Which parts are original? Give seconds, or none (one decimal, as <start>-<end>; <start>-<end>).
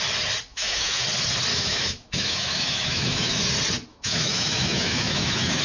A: 0.0-0.5; 1.0-1.5; 3.4-3.9